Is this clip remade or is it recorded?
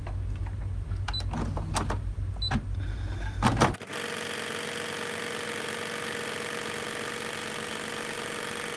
recorded